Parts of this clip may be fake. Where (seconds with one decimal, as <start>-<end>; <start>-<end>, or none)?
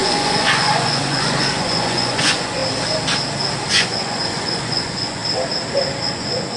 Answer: 0.0-2.6; 3.7-5.2; 6.1-6.6